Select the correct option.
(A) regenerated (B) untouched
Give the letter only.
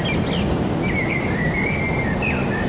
B